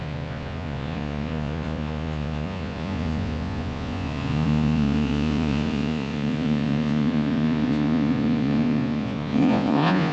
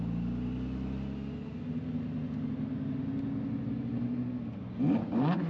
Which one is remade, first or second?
first